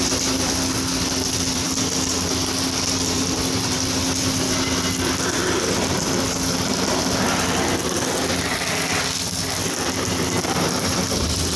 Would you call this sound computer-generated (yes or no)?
yes